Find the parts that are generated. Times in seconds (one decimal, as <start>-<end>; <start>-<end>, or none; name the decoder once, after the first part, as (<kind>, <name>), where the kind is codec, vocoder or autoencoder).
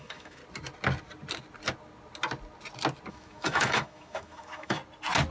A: 0.0-0.4 (autoencoder, DAC-VAE); 3.1-4.8